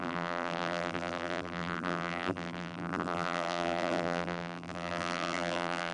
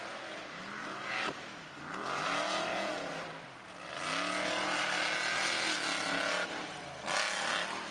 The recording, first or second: second